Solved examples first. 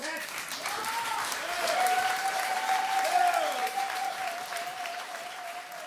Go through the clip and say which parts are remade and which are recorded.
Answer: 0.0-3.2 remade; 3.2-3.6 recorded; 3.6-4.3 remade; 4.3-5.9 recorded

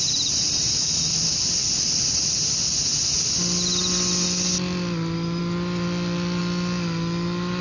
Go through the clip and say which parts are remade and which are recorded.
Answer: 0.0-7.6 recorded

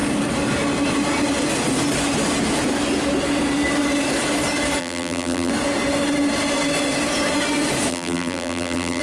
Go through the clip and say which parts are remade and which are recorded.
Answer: 0.0-4.8 recorded; 4.8-5.5 remade; 5.5-7.9 recorded; 7.9-9.0 remade

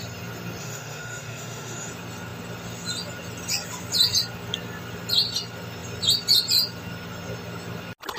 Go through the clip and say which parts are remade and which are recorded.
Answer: 0.0-0.6 recorded; 0.6-1.9 remade; 1.9-8.2 recorded